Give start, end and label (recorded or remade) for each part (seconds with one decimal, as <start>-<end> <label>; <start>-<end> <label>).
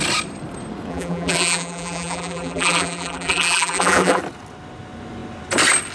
0.0-0.9 recorded; 0.9-4.2 remade; 4.2-5.9 recorded